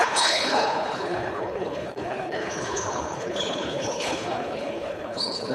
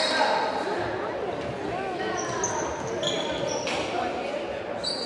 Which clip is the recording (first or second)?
second